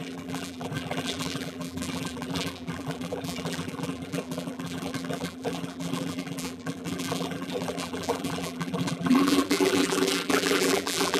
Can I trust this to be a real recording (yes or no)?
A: no